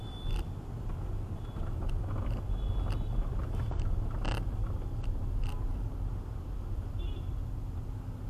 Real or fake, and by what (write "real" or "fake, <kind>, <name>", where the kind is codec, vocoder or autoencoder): real